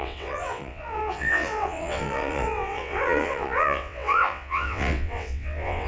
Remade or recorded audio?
remade